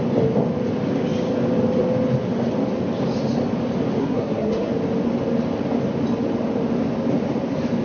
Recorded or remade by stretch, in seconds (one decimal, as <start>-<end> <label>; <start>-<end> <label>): 0.0-4.0 recorded; 4.0-4.7 remade; 4.7-7.8 recorded